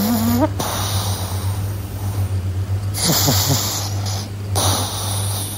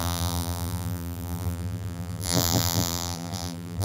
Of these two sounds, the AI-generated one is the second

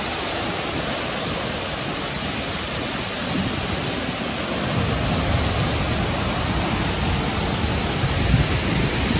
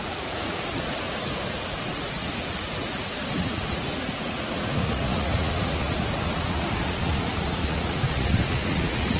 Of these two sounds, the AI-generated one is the second